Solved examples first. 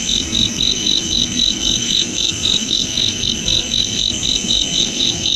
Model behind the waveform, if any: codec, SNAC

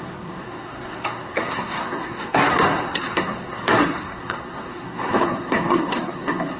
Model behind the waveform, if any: codec, SNAC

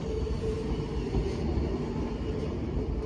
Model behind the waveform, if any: none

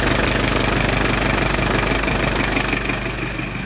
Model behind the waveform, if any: none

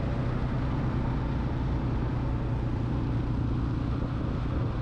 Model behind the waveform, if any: none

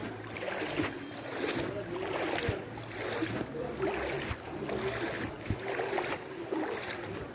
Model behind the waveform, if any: none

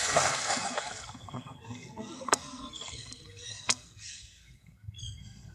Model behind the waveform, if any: codec, SNAC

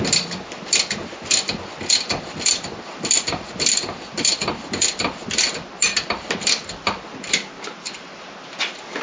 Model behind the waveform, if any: none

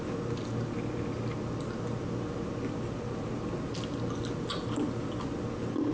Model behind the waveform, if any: none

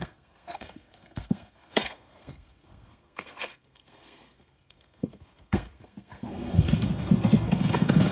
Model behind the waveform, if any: codec, SNAC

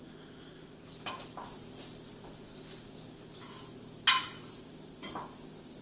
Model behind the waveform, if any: none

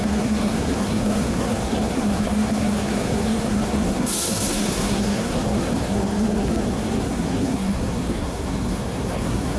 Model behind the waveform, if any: codec, SNAC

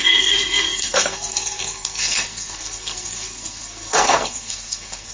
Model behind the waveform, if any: codec, SNAC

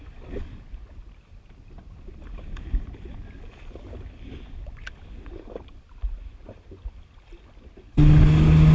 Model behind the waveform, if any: none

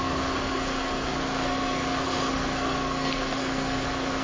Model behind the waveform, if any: codec, SNAC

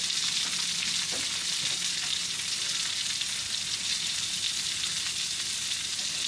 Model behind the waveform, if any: none